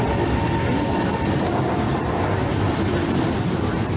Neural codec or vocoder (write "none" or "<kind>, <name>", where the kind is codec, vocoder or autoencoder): none